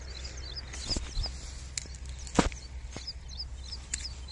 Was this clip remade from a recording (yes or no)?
no